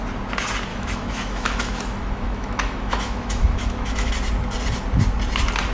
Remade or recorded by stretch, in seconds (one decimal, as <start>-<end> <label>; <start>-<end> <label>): 0.0-0.7 recorded; 0.7-4.1 remade; 4.1-5.7 recorded